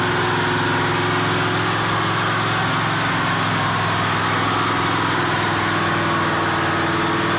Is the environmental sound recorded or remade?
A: recorded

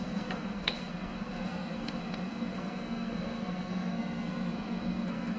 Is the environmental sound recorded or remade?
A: remade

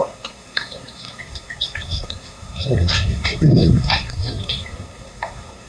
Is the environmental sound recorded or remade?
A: remade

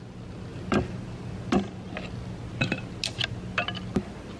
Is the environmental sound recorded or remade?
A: recorded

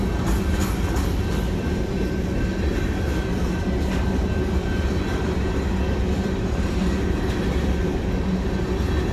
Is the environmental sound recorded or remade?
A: recorded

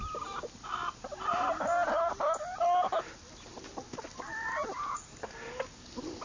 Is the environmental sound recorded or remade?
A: recorded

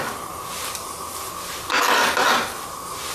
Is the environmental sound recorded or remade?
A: recorded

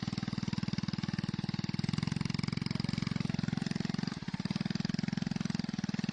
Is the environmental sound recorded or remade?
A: recorded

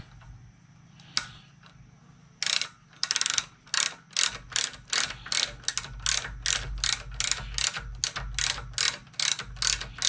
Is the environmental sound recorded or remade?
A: recorded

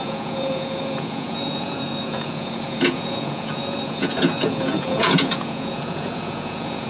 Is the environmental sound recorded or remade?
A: remade